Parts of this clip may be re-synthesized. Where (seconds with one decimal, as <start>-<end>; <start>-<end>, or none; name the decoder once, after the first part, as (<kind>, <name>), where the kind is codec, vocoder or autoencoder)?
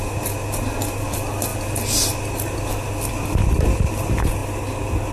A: none